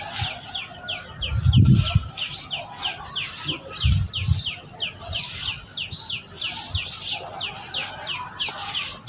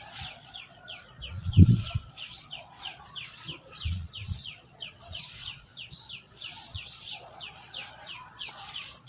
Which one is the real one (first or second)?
first